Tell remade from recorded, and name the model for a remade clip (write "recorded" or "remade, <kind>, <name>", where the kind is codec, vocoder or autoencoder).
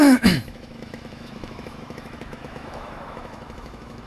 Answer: remade, autoencoder, DAC-VAE